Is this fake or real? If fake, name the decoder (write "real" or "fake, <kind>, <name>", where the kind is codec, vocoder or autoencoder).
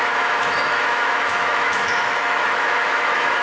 fake, autoencoder, DAC-VAE